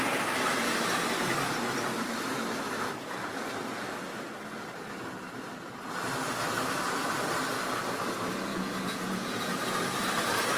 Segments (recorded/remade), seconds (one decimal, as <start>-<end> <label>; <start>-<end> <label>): 0.0-8.5 recorded; 8.5-9.6 remade; 9.6-10.6 recorded